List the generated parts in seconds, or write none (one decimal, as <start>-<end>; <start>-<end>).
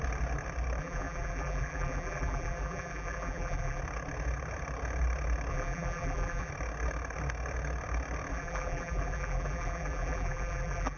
0.8-3.8; 5.5-6.5; 8.3-11.0